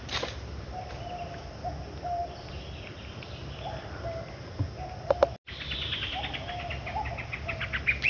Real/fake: real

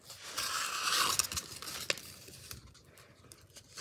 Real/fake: real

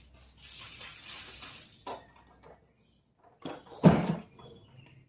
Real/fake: real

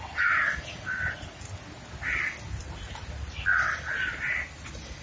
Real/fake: real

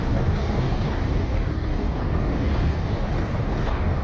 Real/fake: fake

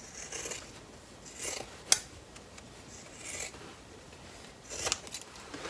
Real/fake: real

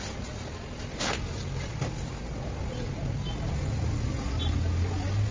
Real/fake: real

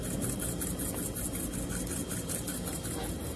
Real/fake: real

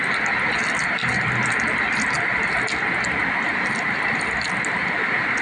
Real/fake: real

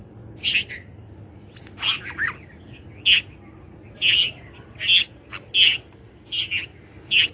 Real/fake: real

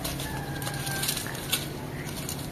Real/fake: real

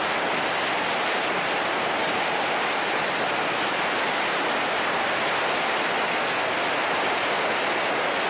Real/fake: real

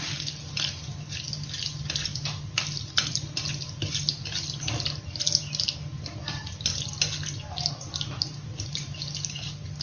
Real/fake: real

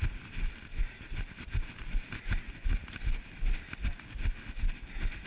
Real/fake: real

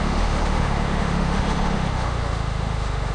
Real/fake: fake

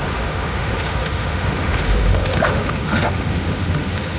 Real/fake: fake